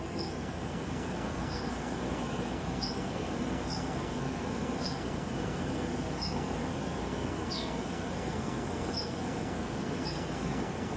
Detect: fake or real fake